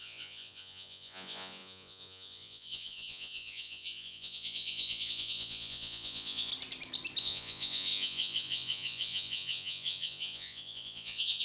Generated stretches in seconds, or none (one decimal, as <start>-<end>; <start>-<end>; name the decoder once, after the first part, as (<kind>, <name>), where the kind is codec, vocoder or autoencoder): 0.0-6.5 (vocoder, Vocos); 7.2-11.4